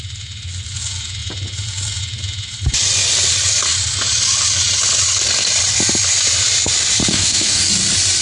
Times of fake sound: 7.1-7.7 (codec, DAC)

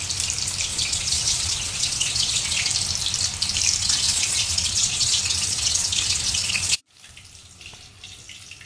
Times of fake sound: 0.7-2.7 (vocoder, Vocos); 3.8-6.9

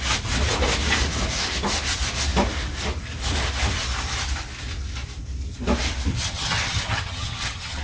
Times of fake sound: 6.1-7.8 (vocoder, HiFi-GAN)